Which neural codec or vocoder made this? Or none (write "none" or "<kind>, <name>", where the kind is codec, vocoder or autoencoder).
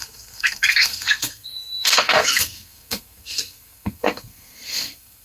codec, SNAC